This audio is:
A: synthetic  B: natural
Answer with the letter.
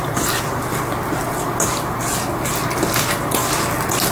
B